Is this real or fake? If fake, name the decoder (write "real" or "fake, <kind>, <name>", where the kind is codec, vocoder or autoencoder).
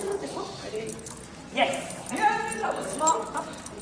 real